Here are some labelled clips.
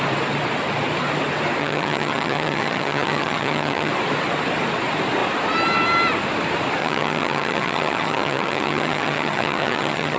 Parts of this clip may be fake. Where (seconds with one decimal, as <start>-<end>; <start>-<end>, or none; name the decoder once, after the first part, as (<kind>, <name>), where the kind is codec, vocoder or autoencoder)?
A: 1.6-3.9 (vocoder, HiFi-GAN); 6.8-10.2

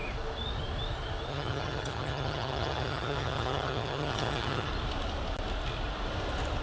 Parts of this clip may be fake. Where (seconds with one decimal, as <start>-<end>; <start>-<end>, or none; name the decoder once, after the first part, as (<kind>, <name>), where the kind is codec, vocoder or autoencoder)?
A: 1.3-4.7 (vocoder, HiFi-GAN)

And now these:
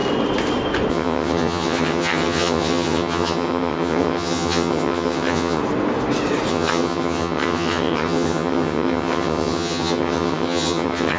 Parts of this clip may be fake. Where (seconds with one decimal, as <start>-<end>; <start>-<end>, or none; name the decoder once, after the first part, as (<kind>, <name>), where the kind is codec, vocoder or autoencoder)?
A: 0.9-5.6 (vocoder, HiFi-GAN); 6.5-11.2